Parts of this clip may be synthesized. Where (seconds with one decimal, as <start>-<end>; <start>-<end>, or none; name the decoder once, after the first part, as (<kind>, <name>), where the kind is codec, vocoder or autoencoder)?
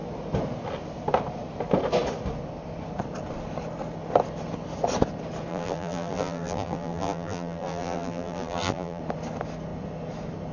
5.5-9.0 (vocoder, BigVGAN v2)